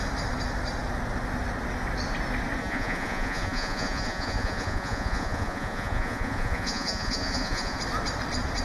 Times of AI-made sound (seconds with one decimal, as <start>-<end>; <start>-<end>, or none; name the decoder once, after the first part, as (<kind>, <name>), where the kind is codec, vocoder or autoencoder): 2.6-7.8 (vocoder, Vocos)